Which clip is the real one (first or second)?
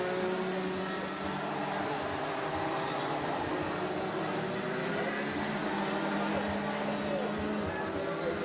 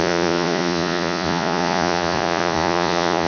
first